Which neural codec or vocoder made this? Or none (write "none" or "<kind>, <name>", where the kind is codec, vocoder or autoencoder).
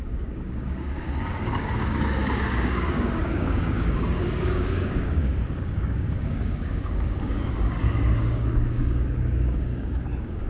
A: codec, DAC